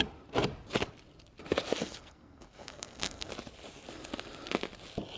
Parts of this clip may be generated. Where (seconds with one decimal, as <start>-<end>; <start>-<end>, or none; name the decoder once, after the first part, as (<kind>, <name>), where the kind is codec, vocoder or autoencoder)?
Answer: 1.8-3.3 (codec, SNAC)